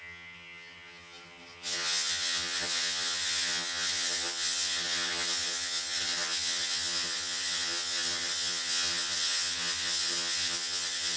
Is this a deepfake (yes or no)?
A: yes